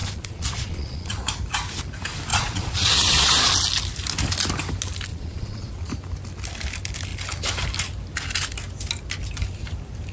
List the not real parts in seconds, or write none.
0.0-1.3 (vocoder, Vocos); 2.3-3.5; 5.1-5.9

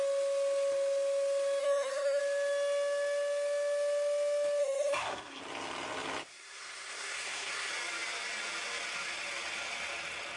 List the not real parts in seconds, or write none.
1.6-2.2 (codec, SNAC); 4.6-5.4; 6.3-7.7

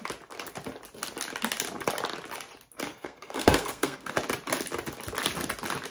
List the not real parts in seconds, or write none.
2.9-4.1 (codec, SNAC)

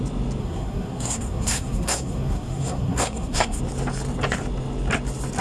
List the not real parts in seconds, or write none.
0.4-3.6 (codec, SNAC)

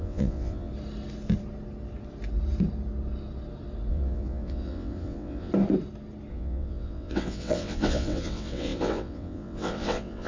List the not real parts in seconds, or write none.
0.0-0.7 (vocoder, WaveNeXt); 3.9-5.5; 6.3-10.3

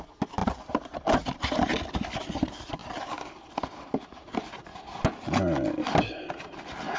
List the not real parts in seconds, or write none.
0.4-1.5 (vocoder, BigVGAN v2)